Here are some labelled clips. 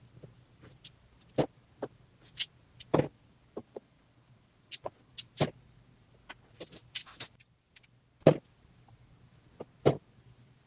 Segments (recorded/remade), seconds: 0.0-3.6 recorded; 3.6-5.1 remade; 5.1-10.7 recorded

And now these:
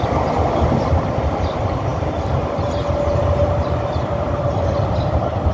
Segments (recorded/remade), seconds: 0.0-5.5 recorded